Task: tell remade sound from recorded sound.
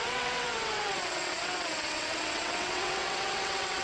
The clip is remade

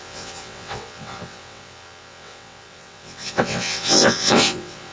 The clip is remade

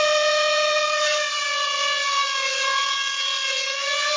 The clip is remade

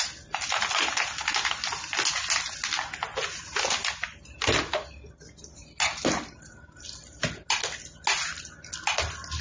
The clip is recorded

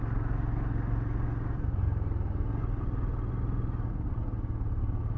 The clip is recorded